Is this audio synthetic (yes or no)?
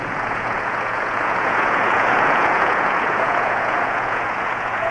yes